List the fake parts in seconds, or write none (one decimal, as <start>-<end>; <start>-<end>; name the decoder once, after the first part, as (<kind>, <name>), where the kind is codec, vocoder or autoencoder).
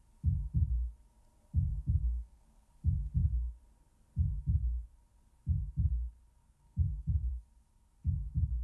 1.7-2.7 (codec, SNAC); 6.4-7.3